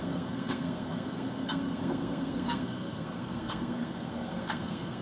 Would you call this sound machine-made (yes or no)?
yes